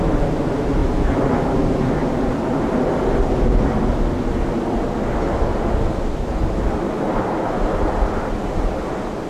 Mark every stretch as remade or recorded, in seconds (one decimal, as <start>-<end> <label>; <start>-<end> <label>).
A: 0.0-9.3 recorded